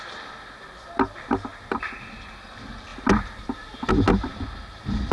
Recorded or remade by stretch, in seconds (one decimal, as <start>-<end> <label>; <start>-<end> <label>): 0.0-5.1 recorded